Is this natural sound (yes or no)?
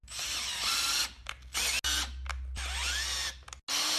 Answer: yes